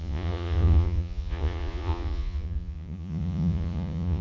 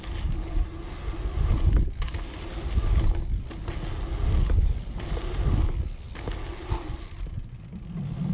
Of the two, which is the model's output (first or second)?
first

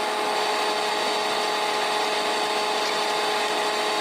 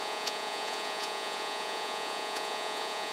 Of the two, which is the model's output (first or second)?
second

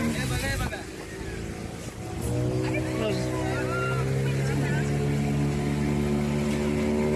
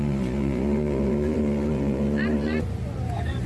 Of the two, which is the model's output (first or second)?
second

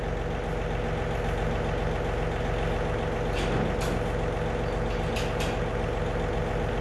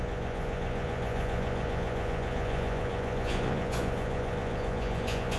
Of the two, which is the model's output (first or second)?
second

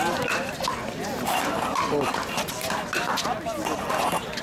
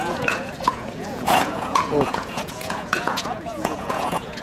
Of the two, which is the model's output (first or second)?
second